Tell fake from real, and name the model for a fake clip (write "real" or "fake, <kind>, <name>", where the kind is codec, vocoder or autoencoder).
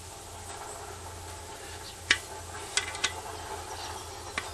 real